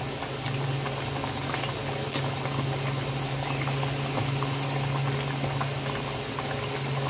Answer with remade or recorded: recorded